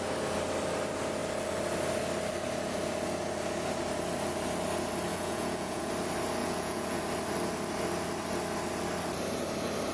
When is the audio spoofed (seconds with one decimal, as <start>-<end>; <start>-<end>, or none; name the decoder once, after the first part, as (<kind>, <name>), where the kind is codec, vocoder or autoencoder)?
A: 5.1-5.9 (vocoder, Vocos); 6.4-7.0